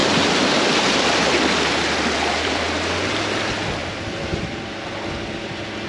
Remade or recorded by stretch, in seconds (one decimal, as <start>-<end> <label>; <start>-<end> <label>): 0.0-3.1 remade; 3.1-3.8 recorded; 3.8-4.9 remade; 4.9-5.9 recorded